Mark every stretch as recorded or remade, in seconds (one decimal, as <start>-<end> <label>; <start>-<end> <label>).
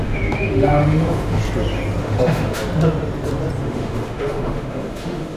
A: 0.0-1.4 remade; 1.4-2.0 recorded; 2.0-2.6 remade; 2.6-3.6 recorded; 3.6-5.4 remade